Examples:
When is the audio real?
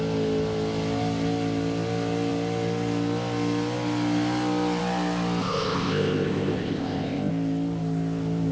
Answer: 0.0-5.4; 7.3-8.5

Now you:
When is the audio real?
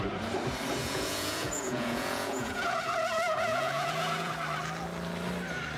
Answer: 0.0-0.8; 4.3-5.8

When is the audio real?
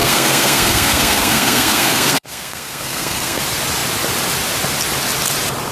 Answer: 3.4-5.7